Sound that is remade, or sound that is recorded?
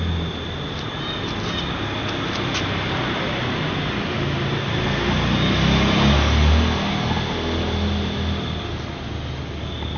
recorded